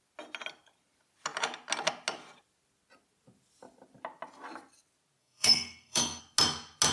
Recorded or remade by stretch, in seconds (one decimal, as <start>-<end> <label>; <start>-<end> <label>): 0.0-5.2 recorded; 5.2-6.2 remade; 6.2-6.9 recorded